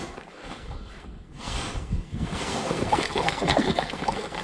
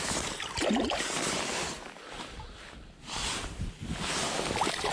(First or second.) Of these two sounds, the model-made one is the first